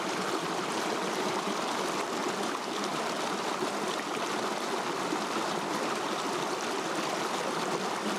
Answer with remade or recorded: recorded